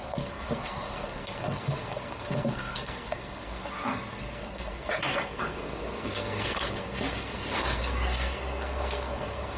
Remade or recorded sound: remade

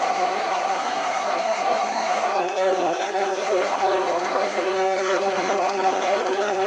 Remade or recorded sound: remade